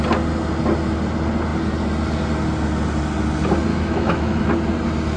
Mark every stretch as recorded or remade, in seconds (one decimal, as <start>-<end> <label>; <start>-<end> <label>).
0.0-3.7 recorded; 3.7-4.5 remade; 4.5-5.2 recorded